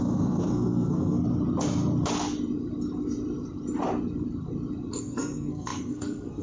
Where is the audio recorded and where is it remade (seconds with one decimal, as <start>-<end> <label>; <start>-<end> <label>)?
0.0-1.2 remade; 1.2-5.0 recorded; 5.0-6.4 remade